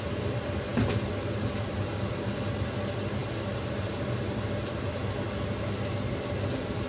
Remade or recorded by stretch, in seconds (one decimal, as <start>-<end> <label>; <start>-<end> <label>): 0.0-0.7 recorded; 0.7-1.9 remade; 1.9-6.9 recorded